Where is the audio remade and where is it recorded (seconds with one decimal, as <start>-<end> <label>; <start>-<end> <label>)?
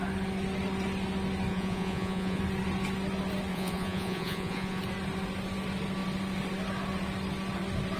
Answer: 0.0-1.5 recorded; 1.5-2.4 remade; 2.4-3.5 recorded; 3.5-4.8 remade; 4.8-8.0 recorded